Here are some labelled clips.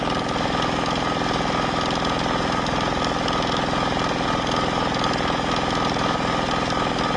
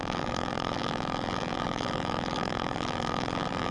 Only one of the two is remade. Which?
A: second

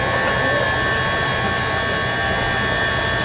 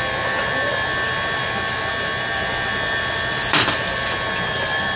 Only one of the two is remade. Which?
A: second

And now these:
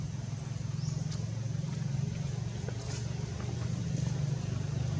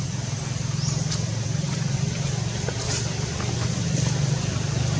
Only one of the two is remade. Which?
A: second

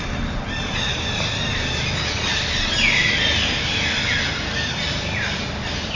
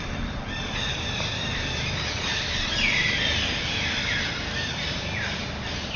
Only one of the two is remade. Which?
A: second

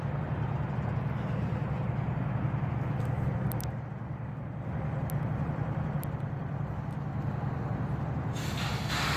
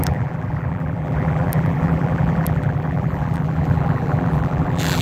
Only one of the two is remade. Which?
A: second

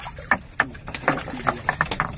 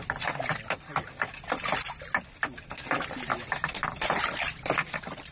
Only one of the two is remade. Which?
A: second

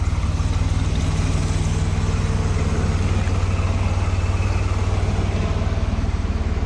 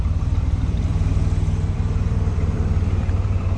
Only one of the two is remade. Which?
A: second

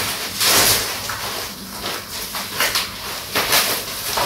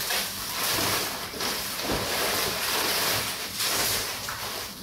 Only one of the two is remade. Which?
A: second